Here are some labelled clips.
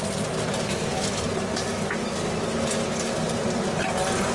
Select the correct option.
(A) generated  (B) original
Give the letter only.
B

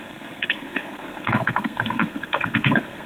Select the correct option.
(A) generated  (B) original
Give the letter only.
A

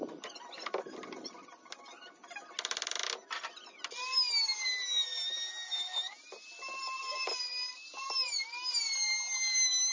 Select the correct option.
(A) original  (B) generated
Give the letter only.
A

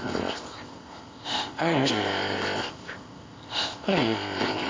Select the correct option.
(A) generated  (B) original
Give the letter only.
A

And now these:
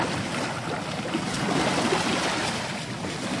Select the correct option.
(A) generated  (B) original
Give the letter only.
B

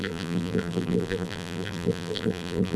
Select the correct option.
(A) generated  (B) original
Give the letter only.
A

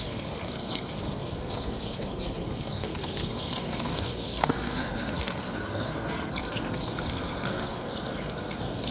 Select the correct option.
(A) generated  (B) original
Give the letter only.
A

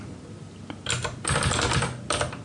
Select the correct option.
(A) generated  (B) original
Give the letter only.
B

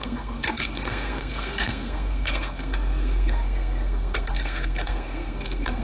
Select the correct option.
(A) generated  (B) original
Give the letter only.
A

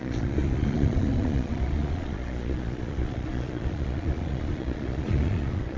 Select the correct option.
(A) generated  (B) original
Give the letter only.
A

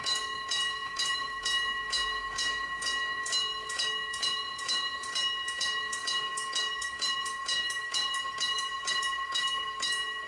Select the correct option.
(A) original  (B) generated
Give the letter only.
B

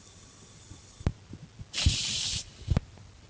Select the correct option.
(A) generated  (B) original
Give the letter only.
B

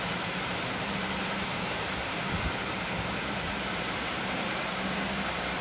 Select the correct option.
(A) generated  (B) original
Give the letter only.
A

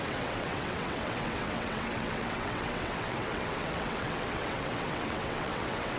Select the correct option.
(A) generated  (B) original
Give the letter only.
A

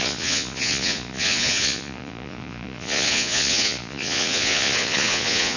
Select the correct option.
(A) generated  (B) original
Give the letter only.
A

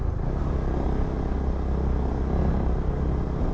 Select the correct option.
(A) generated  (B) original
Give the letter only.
B